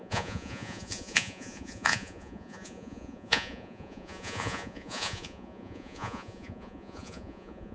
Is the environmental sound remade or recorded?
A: remade